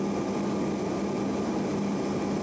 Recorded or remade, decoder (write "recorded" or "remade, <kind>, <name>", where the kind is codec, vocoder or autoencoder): recorded